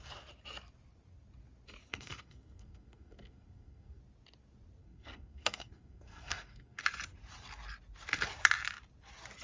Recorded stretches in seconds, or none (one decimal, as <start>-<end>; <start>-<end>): 0.0-1.9; 4.0-4.8; 6.8-9.4